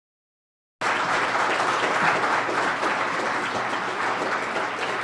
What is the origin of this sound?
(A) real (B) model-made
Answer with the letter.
A